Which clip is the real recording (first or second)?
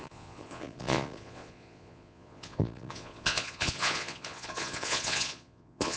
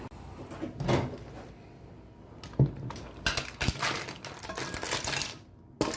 second